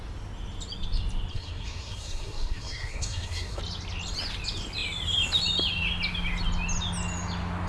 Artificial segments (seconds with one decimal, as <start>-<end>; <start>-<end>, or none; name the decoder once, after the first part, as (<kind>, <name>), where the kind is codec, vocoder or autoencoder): 1.3-3.6 (codec, SNAC)